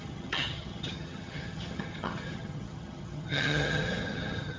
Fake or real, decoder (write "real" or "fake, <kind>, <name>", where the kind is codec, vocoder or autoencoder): fake, vocoder, HiFi-GAN